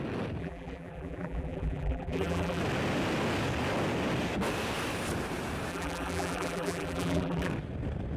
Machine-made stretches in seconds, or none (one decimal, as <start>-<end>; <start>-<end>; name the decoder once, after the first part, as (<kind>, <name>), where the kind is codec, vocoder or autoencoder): 0.4-2.6 (vocoder, BigVGAN v2); 5.7-7.5